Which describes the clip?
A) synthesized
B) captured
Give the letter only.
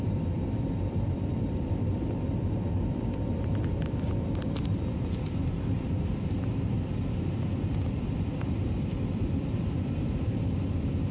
A